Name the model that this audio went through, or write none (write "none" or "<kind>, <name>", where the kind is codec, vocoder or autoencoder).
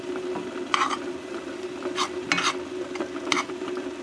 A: none